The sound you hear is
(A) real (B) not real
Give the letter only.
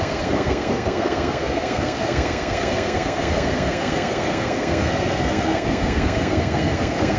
B